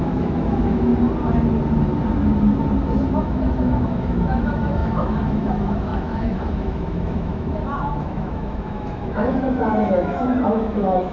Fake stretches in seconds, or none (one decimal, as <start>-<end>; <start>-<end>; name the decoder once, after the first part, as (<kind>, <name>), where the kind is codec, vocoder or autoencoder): 0.0-0.9 (autoencoder, DAC-VAE); 3.1-11.1